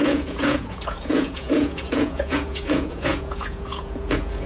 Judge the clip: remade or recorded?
remade